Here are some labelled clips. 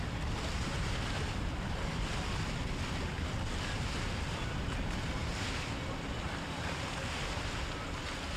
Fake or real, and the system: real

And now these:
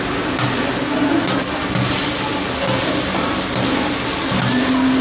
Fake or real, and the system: real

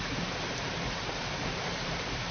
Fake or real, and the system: fake, vocoder, BigVGAN v2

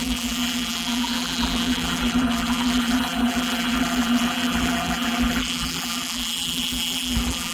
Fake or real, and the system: fake, vocoder, BigVGAN v2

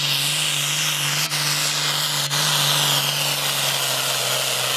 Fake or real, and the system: real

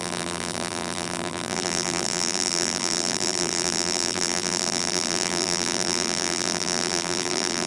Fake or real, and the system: fake, vocoder, BigVGAN v2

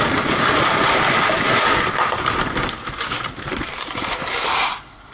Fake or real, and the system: fake, vocoder, BigVGAN v2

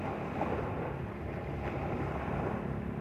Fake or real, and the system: real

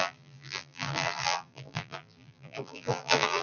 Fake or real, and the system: fake, vocoder, BigVGAN v2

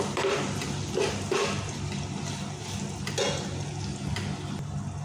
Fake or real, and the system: real